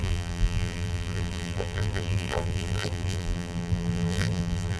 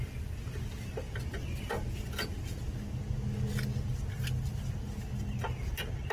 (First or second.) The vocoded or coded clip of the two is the first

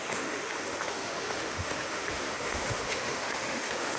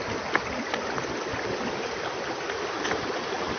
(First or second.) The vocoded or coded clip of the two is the first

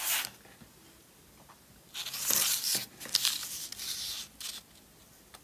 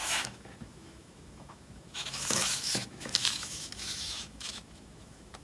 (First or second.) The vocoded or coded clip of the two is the second